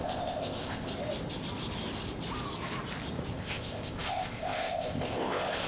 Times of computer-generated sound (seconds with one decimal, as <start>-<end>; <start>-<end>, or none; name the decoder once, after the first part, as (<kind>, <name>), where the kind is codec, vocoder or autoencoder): 0.0-0.9 (codec, ZipCodec); 3.3-5.7